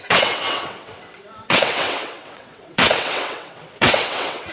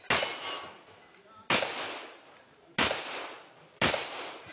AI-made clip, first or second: first